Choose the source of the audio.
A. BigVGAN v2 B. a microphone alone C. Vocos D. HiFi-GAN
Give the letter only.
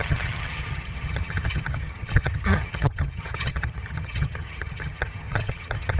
D